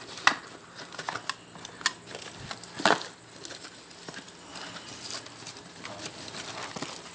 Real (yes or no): yes